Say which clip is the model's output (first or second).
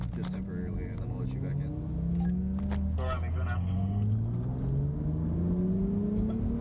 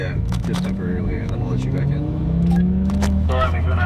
second